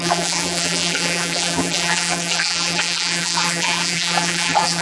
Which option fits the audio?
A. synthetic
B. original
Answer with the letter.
A